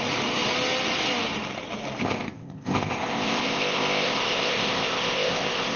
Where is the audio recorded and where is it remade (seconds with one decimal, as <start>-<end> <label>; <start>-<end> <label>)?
0.0-2.0 recorded; 2.0-5.8 remade